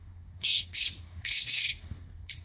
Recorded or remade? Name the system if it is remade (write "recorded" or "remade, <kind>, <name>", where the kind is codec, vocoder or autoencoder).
remade, codec, SNAC